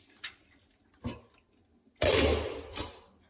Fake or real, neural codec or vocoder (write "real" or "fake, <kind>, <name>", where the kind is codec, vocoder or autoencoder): real